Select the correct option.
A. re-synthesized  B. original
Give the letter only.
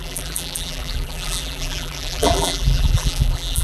A